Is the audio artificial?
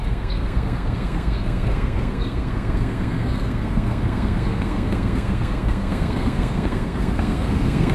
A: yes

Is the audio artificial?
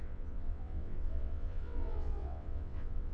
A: yes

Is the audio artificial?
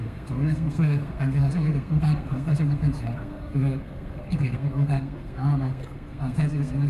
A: yes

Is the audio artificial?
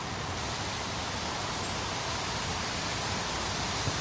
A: no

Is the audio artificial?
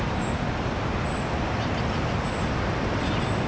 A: no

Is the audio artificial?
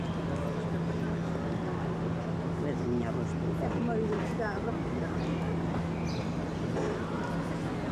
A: no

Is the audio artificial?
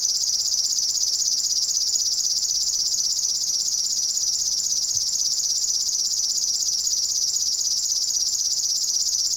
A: no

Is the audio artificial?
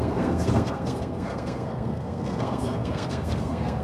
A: yes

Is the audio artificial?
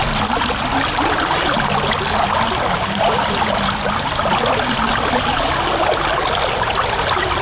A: no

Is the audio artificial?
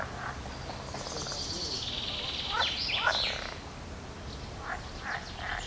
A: no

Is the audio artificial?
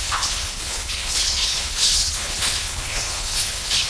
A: yes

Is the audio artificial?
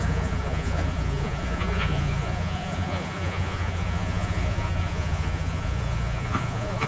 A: yes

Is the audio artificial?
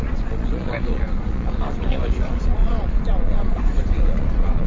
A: yes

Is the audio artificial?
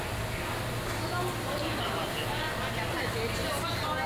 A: no